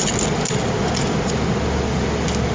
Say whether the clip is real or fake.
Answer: real